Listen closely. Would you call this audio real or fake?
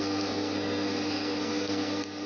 fake